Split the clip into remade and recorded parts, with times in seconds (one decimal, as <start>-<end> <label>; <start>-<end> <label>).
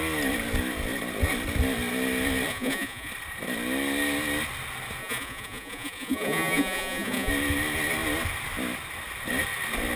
0.0-2.5 recorded; 2.5-3.1 remade; 3.1-5.0 recorded; 5.0-7.3 remade; 7.3-10.0 recorded